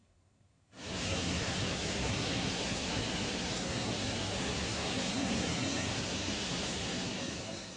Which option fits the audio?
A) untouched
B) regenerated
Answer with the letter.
B